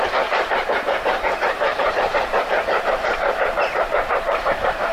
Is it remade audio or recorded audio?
remade